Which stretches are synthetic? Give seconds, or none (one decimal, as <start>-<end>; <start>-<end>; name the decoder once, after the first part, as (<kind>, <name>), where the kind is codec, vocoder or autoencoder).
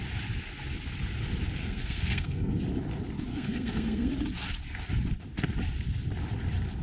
1.6-2.6 (codec, SNAC); 3.3-4.1